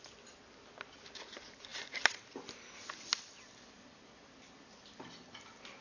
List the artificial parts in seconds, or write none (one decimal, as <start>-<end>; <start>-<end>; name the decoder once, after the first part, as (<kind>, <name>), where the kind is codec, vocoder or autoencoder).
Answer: none